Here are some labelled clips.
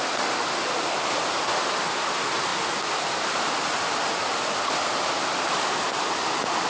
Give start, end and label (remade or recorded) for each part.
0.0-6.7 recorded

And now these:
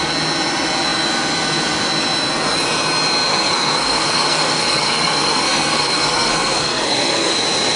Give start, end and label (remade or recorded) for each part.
0.0-3.3 recorded; 3.3-7.3 remade; 7.3-7.8 recorded

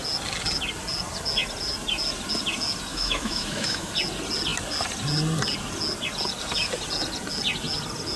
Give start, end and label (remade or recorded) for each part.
0.0-2.9 recorded; 2.9-3.9 remade; 3.9-8.2 recorded